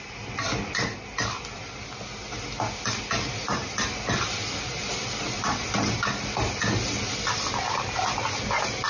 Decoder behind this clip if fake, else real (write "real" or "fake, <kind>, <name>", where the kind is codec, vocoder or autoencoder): real